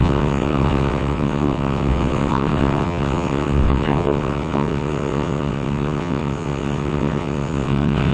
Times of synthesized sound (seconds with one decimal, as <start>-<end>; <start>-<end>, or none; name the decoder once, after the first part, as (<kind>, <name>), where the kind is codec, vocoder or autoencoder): 0.0-8.1 (vocoder, WaveNeXt)